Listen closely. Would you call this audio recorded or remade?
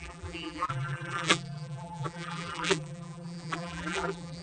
remade